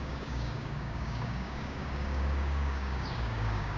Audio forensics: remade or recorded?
remade